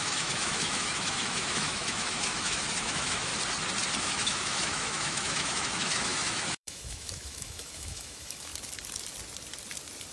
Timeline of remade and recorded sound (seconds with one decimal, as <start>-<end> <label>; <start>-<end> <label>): 0.0-3.3 remade; 3.3-4.0 recorded; 4.0-8.5 remade; 8.5-10.1 recorded